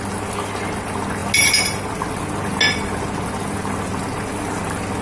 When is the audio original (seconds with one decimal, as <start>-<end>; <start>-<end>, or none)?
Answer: 0.0-5.0